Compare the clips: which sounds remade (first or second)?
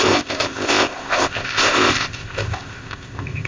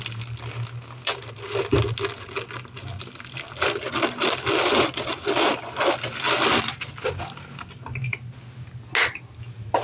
first